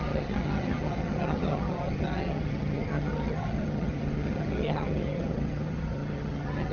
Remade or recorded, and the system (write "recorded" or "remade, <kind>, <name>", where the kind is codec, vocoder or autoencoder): remade, vocoder, HiFi-GAN